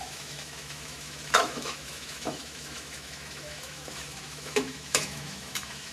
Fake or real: fake